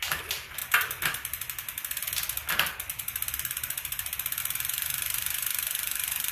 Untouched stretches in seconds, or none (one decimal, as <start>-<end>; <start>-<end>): 0.6-4.4